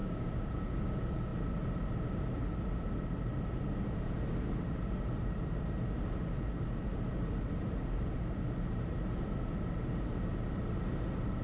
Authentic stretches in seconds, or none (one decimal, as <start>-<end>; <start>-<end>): 0.9-11.4